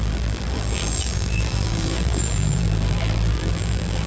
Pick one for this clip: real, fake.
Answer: fake